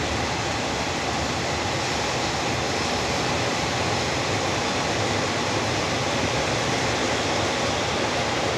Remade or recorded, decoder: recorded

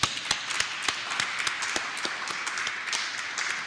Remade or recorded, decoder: recorded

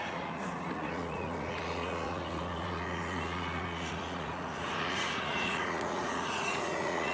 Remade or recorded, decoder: remade, vocoder, Vocos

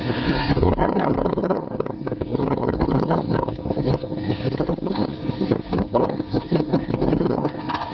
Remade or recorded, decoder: remade, codec, SNAC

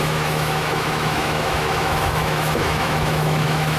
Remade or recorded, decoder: remade, autoencoder, DAC-VAE